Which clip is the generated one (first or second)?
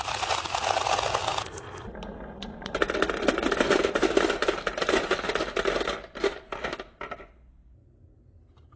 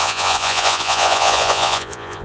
second